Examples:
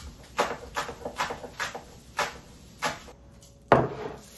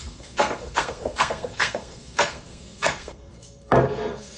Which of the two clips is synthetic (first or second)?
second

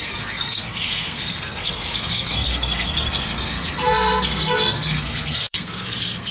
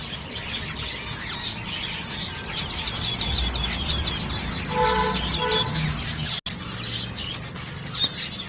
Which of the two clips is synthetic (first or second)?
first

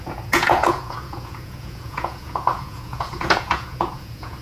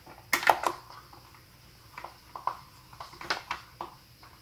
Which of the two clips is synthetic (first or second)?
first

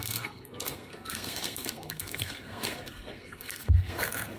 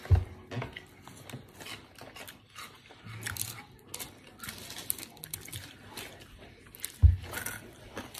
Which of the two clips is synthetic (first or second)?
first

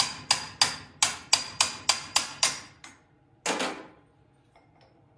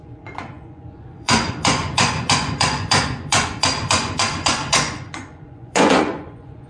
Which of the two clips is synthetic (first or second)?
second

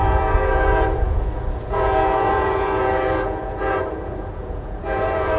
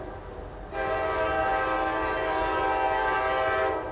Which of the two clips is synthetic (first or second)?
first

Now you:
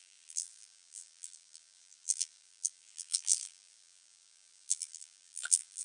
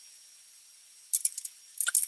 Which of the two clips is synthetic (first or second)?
first